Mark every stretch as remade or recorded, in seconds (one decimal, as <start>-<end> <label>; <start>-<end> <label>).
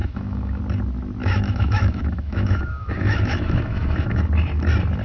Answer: 0.0-0.6 remade; 0.6-1.2 recorded; 1.2-4.2 remade; 4.2-5.0 recorded